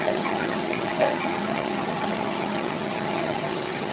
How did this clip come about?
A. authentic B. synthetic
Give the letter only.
B